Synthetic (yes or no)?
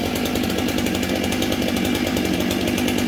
no